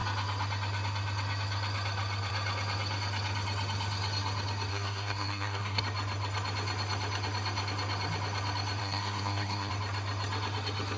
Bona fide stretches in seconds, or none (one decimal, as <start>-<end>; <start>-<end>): 0.0-4.7; 5.8-8.8; 9.7-11.0